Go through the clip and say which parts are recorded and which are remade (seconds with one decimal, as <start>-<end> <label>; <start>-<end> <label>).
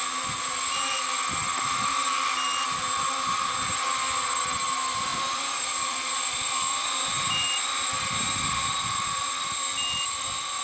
0.0-5.1 recorded; 5.1-7.1 remade; 7.1-10.6 recorded